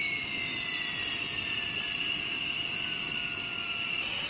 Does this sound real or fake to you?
real